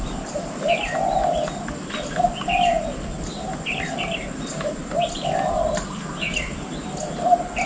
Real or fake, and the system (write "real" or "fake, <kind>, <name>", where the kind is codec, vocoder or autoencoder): real